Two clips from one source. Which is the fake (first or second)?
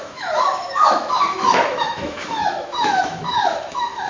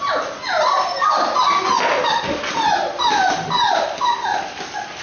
first